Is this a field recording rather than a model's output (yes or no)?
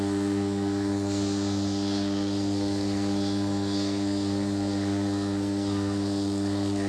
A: no